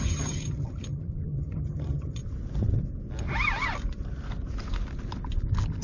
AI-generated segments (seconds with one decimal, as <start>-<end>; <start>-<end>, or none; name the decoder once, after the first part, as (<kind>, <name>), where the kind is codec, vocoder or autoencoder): 0.0-2.2 (vocoder, HiFi-GAN)